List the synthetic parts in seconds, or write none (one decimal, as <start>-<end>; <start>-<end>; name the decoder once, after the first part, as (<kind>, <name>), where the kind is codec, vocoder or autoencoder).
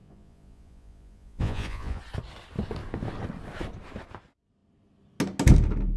0.0-2.0 (vocoder, Vocos)